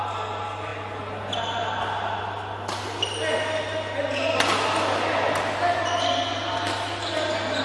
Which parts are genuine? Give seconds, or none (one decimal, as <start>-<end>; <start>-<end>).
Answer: 0.0-7.6